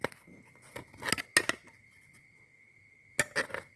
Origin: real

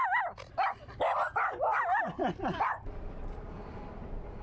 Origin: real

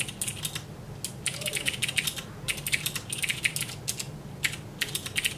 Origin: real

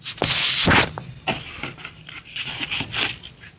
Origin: real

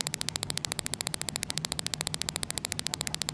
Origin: fake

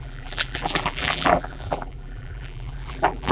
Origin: fake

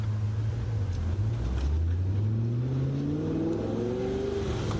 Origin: real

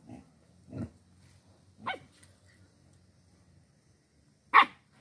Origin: real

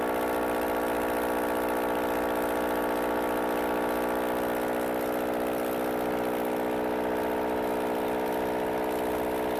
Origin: real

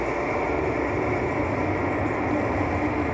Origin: real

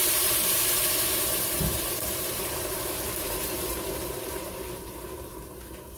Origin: fake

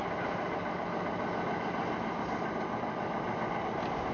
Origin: real